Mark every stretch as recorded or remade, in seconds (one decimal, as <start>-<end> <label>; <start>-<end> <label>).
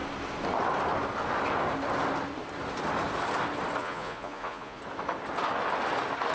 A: 0.0-3.8 recorded; 3.8-4.8 remade; 4.8-6.3 recorded